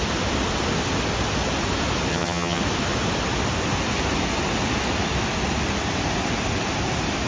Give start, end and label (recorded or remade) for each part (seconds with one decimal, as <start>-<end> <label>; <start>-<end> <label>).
0.0-2.1 recorded; 2.1-2.6 remade; 2.6-7.3 recorded